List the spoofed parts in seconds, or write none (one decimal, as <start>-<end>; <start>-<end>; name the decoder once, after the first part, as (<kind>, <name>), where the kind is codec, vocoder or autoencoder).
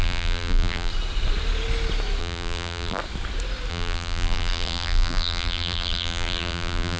0.0-0.9 (vocoder, BigVGAN v2); 2.2-3.0; 3.7-7.0